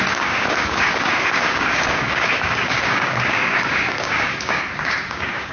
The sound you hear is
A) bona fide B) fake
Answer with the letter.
B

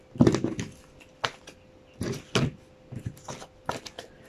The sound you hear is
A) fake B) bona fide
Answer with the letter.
B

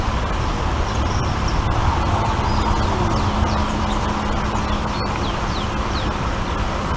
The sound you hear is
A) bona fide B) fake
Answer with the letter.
A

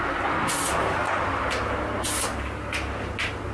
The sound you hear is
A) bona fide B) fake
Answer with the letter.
A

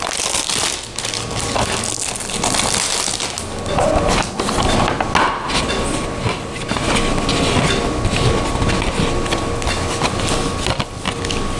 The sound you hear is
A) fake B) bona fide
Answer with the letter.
B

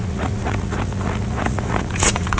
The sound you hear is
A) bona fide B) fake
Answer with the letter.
B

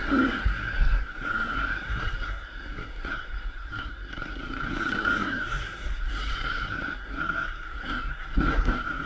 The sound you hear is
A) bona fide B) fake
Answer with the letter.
B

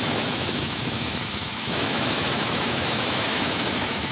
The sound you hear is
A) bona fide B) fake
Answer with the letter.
B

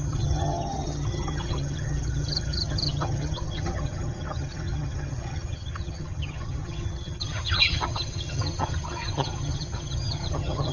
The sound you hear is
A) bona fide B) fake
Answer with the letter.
B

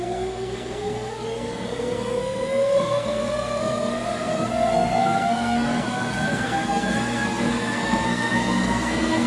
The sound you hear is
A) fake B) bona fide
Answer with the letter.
A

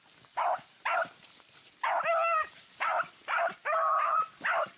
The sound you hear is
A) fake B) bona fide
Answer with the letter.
B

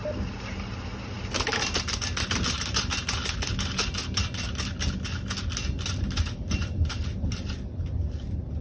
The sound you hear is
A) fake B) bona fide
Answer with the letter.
B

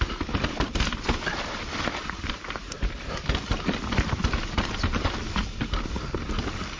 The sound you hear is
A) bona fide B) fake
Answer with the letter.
A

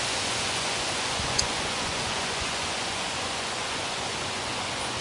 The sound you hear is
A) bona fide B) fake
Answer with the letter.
B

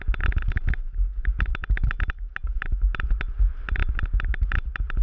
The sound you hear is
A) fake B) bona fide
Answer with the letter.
B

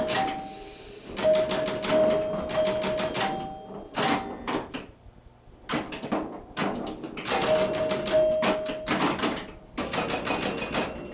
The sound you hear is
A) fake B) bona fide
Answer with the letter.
B